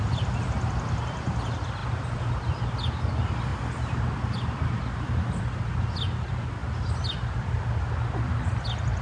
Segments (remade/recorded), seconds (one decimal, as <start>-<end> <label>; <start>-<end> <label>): 0.0-9.0 recorded